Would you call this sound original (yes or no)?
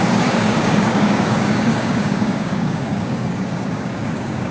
no